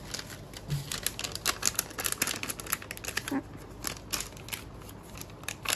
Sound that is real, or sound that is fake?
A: real